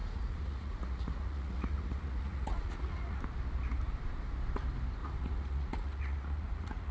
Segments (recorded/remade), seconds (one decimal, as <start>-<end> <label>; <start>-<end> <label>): 0.0-3.2 remade; 3.2-5.0 recorded; 5.0-6.9 remade